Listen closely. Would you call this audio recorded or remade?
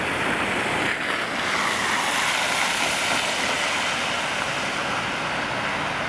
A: recorded